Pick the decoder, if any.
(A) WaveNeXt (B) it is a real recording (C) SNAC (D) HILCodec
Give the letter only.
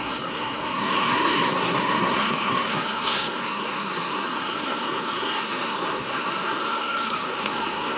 C